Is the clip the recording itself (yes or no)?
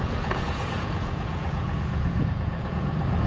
no